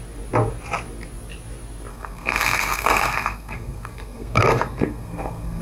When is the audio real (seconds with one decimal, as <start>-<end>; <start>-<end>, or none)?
0.0-1.9